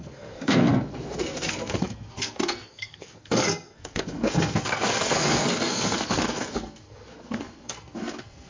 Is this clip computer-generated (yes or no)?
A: yes